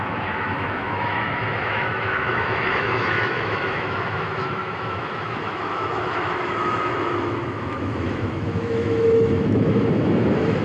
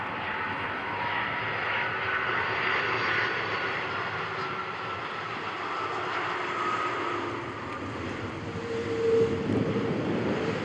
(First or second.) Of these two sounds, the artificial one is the first